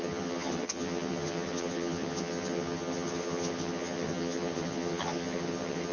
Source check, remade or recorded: remade